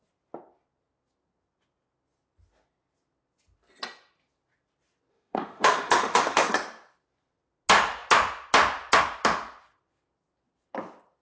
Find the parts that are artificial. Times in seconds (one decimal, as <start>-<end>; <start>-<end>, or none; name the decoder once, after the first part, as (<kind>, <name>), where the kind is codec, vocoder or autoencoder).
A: 5.1-6.5 (autoencoder, DAC-VAE)